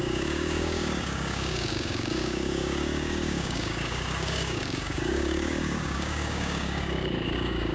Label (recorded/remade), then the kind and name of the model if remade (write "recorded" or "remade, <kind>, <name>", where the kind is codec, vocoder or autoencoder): remade, codec, DAC